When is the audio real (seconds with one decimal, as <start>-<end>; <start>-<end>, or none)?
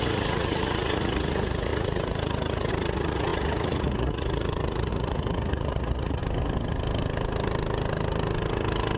6.2-9.0